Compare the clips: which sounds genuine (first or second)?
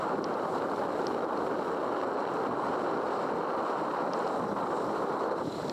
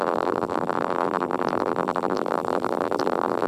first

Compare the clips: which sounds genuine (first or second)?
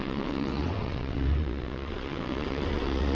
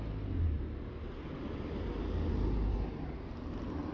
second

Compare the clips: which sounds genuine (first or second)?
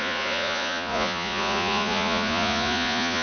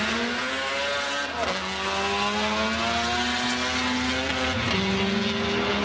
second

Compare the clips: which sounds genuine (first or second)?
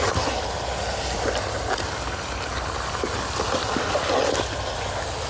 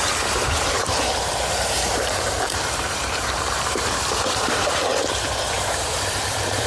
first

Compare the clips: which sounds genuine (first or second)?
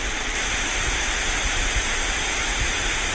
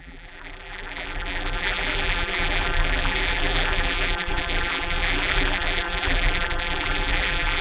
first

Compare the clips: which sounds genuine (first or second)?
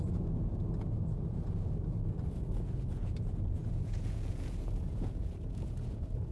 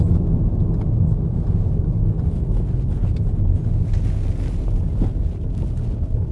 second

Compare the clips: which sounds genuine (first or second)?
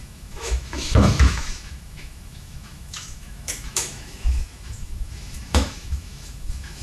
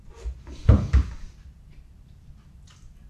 second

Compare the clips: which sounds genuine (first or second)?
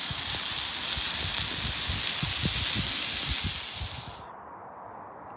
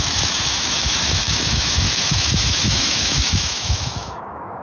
first